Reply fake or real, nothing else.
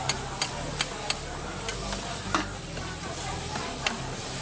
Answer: real